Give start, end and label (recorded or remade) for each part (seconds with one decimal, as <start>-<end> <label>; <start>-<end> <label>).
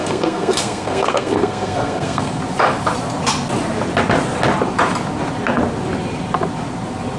0.0-2.4 remade; 2.4-7.2 recorded